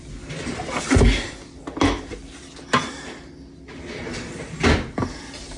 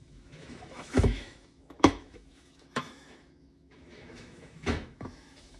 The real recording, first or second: first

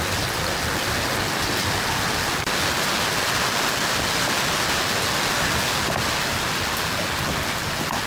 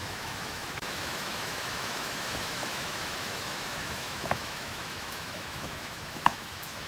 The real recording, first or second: first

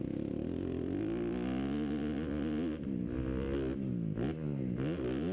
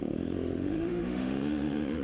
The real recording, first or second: first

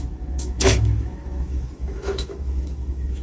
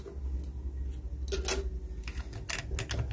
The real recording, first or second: second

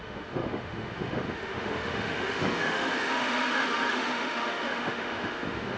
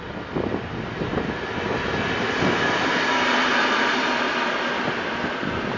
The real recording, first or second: second